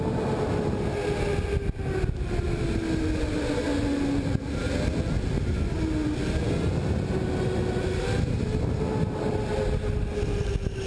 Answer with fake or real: real